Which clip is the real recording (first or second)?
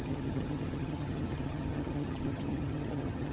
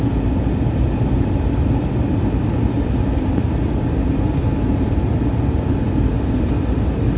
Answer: second